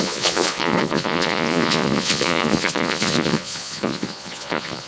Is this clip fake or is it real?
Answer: fake